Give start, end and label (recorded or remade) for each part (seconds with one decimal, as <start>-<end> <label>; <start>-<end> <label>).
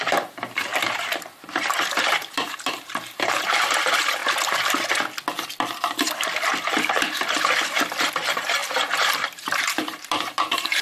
0.0-4.2 remade; 4.2-8.0 recorded; 8.0-10.8 remade